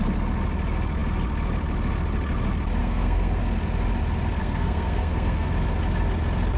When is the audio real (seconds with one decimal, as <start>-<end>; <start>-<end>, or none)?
0.0-2.8; 3.4-4.4; 5.5-6.6